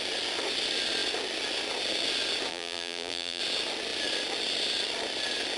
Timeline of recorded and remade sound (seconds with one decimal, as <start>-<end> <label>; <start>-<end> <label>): 0.0-2.5 recorded; 2.5-3.4 remade; 3.4-5.6 recorded